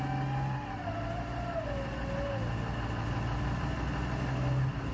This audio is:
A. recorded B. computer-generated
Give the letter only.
A